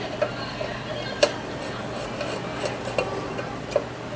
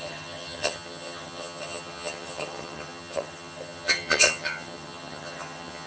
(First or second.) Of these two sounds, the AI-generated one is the second